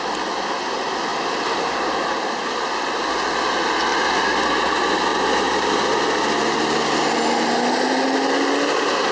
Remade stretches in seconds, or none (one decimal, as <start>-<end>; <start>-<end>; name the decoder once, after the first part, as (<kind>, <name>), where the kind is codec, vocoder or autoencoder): 1.1-1.9 (vocoder, BigVGAN v2)